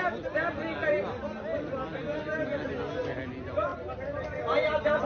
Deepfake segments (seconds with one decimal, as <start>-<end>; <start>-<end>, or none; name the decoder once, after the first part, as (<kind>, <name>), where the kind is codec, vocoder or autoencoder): none